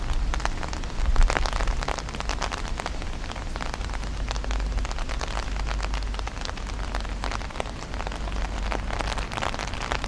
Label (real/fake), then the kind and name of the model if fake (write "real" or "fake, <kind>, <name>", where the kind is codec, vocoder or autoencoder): real